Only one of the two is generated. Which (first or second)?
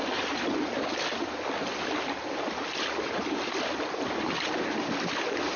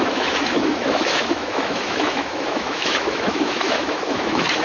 second